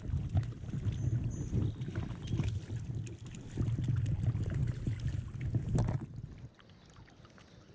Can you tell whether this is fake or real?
real